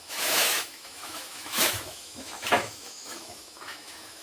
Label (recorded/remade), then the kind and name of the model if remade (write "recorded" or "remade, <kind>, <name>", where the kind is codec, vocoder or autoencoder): remade, autoencoder, DAC-VAE